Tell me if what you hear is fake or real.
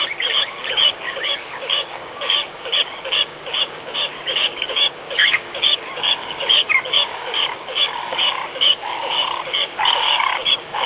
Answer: fake